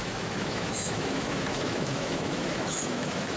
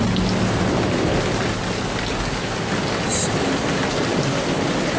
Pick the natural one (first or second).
second